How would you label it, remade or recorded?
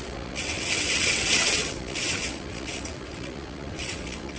remade